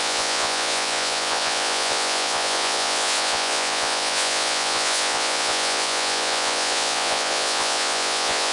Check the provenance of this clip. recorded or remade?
remade